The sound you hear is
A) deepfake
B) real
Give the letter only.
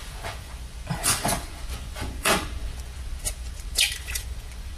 A